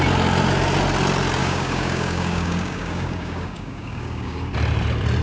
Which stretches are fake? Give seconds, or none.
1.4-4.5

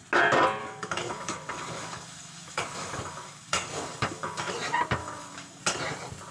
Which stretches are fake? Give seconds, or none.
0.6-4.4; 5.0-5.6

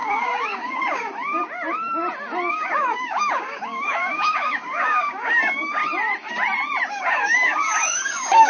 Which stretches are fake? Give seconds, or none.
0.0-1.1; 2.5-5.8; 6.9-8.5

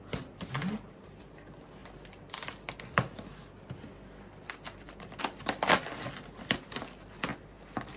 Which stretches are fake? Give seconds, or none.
none